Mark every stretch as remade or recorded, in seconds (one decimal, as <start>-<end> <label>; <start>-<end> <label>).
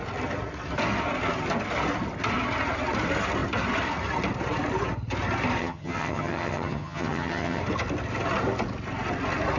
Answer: 0.0-5.6 recorded; 5.6-7.6 remade; 7.6-9.6 recorded